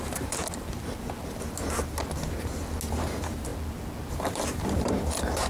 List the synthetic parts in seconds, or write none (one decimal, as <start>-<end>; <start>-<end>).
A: 0.0-0.4; 2.9-3.5; 4.1-5.5